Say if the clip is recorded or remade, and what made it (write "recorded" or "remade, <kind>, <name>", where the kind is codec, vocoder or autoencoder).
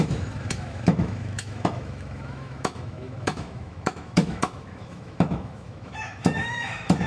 remade, autoencoder, DAC-VAE